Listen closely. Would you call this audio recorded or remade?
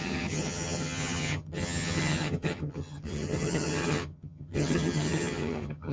remade